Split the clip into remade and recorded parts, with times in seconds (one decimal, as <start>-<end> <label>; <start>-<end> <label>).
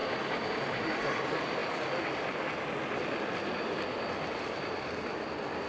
0.0-0.8 remade; 0.8-5.7 recorded